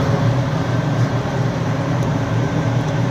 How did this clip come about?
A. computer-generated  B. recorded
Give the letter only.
A